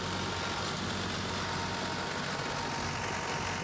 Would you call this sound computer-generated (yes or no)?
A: no